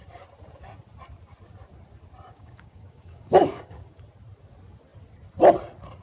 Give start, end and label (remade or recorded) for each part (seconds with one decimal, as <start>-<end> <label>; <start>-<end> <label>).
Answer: 0.0-2.3 recorded; 2.3-4.0 remade; 4.0-6.0 recorded